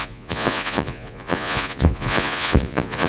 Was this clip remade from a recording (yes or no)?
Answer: yes